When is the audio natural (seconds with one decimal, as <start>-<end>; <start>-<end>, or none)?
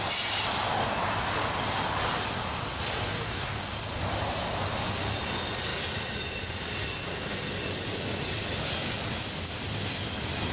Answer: 0.0-3.1; 3.6-10.5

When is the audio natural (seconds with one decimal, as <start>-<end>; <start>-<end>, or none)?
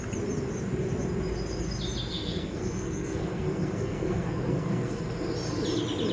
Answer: 0.0-2.1; 5.0-6.1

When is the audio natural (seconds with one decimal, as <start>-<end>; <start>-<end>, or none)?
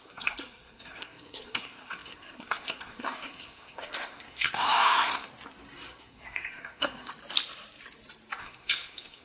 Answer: 5.3-6.0; 7.1-8.4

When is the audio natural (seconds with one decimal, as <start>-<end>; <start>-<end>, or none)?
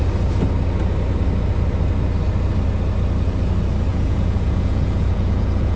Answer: 0.0-3.9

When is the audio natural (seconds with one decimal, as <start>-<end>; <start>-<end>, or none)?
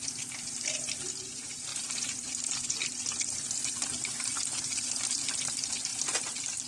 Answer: 0.0-6.7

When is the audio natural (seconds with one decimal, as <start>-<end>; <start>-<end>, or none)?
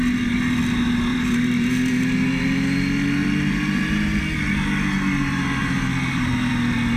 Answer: 0.0-1.1; 2.4-3.2; 4.2-5.6; 6.5-7.0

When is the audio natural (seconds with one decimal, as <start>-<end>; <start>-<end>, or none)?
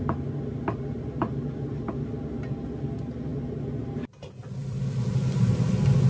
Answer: 0.0-6.1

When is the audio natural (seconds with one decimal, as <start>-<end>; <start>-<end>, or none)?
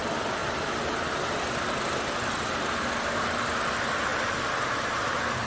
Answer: 0.0-5.5